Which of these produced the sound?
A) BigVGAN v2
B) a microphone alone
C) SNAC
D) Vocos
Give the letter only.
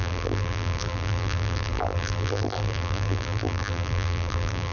A